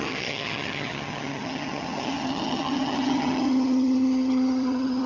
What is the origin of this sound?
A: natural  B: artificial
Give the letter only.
B